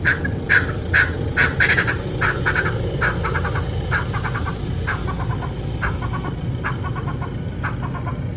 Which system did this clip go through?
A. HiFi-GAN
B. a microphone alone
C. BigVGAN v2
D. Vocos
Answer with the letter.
B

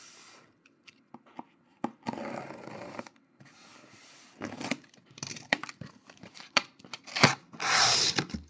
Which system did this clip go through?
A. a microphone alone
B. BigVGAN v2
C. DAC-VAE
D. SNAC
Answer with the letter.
A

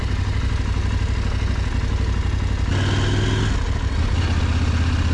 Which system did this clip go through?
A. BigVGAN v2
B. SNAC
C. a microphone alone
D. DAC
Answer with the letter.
C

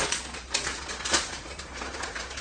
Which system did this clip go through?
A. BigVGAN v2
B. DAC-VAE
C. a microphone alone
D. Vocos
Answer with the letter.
D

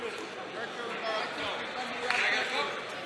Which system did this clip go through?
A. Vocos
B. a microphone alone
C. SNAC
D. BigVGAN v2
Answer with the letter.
B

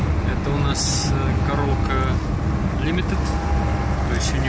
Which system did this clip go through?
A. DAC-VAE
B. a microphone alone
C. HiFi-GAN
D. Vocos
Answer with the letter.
B